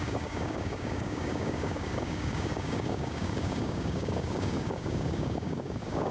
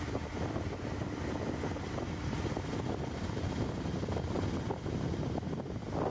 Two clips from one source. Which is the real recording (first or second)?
second